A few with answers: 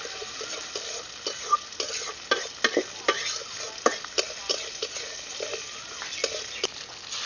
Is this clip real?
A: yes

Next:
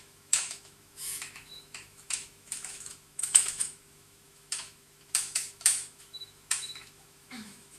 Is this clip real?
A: no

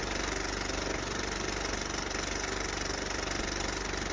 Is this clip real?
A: yes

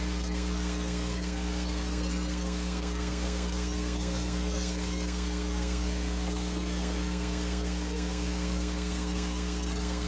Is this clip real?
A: no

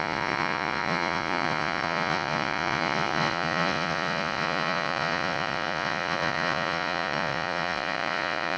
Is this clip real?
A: no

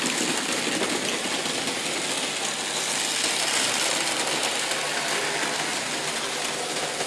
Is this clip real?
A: yes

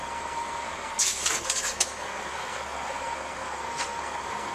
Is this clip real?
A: no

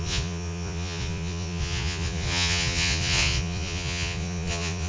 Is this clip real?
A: no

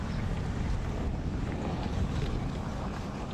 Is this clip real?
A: yes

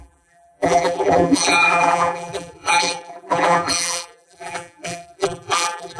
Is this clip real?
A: no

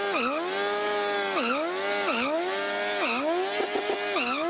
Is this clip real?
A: yes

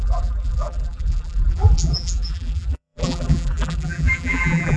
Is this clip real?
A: no